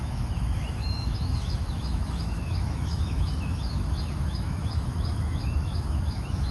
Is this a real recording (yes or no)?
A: no